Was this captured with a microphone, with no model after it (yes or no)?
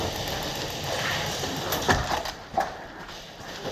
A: yes